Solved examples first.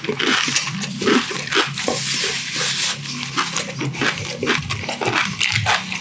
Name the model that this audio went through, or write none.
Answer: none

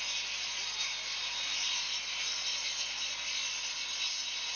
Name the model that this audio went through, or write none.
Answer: none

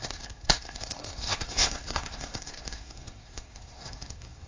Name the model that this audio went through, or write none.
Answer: codec, SNAC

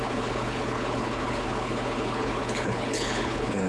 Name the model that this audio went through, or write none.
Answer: codec, HILCodec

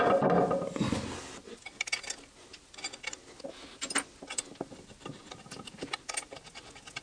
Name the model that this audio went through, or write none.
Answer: none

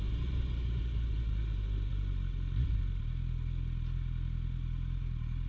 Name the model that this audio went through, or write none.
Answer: none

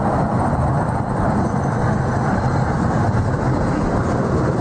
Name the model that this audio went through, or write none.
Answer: none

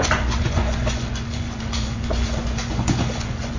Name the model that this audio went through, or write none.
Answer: vocoder, Vocos